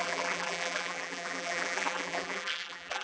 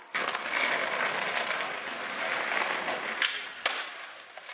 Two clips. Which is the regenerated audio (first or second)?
first